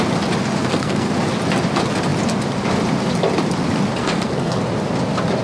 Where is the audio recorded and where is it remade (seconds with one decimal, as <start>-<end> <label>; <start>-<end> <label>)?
0.0-0.6 recorded; 0.6-1.1 remade; 1.1-4.0 recorded; 4.0-4.6 remade; 4.6-5.4 recorded